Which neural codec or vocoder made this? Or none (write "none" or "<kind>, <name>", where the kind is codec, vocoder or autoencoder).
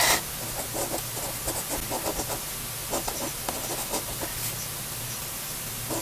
none